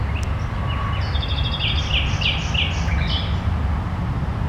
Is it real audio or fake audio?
real